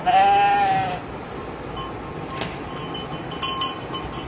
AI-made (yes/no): no